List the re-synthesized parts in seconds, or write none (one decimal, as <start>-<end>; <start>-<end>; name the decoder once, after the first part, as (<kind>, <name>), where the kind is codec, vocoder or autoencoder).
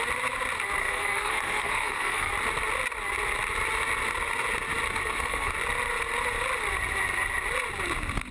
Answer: 0.8-2.3 (codec, SNAC); 5.0-5.5